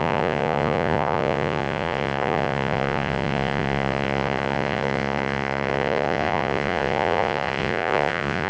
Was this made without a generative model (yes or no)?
no